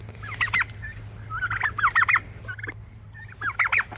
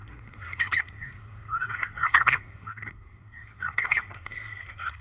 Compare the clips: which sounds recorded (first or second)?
first